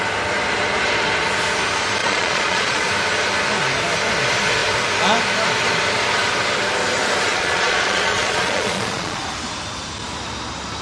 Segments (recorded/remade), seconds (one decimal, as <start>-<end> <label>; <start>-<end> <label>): 0.0-2.0 recorded; 2.0-2.9 remade; 2.9-7.3 recorded; 7.3-9.2 remade; 9.2-10.8 recorded